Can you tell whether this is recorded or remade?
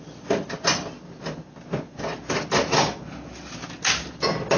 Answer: recorded